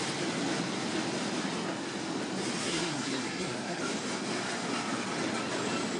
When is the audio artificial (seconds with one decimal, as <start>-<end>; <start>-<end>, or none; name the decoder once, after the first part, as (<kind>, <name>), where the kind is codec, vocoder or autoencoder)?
2.6-3.8 (codec, SNAC)